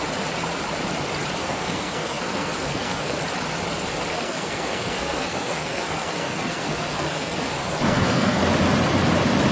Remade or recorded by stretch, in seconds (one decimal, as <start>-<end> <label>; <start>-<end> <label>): 0.0-1.4 recorded; 1.4-3.2 remade; 3.2-4.1 recorded; 4.1-8.4 remade; 8.4-9.5 recorded